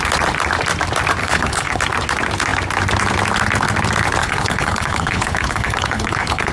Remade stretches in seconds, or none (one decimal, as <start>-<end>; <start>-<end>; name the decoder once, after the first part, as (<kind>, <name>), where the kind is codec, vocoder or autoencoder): 1.2-1.8 (codec, HILCodec); 4.2-6.5